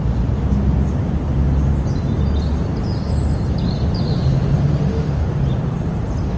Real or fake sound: real